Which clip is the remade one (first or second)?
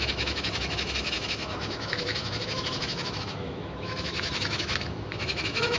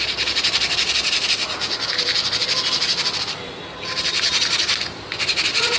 first